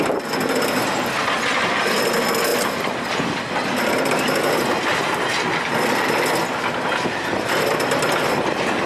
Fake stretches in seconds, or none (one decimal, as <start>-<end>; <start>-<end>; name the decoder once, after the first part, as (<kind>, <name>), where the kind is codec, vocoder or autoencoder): none